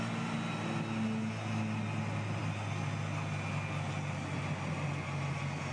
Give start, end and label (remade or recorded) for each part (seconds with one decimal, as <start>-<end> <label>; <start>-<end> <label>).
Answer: 0.0-5.7 recorded